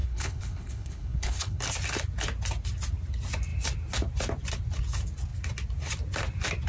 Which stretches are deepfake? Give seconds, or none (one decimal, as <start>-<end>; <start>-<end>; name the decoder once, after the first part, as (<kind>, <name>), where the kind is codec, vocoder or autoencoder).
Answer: 0.0-1.6 (codec, HILCodec)